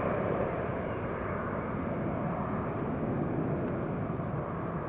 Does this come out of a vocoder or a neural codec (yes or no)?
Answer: no